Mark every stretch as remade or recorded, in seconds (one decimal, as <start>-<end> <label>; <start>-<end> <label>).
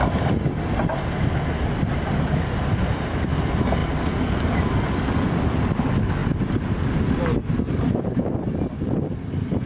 0.0-9.7 recorded